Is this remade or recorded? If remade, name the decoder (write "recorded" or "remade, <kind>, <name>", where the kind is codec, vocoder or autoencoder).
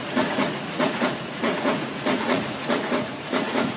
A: remade, vocoder, Vocos